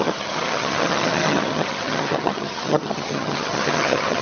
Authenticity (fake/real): fake